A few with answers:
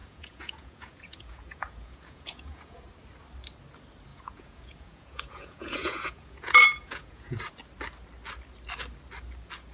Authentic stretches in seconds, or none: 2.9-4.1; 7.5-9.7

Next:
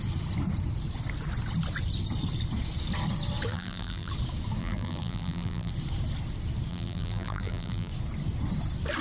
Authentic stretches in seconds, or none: 0.0-3.5; 4.1-4.6; 5.7-6.7; 7.9-9.0

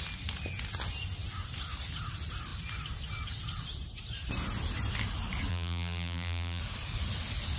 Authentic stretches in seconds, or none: 0.0-5.5; 6.6-7.6

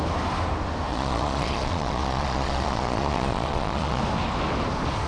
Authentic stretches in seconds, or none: 0.0-0.9; 4.0-5.1

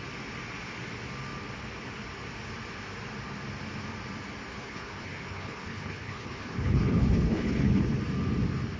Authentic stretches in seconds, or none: 0.0-4.5; 8.0-8.8

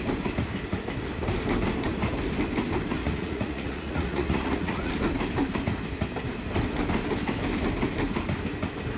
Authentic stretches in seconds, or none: 0.0-3.0; 4.9-9.0

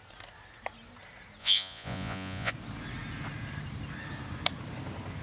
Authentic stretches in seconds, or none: 0.0-1.4; 2.5-5.2

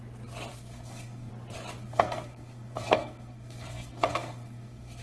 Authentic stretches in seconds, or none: 0.0-0.5; 1.3-1.8